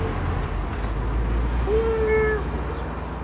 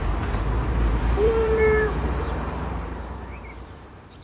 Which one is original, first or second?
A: first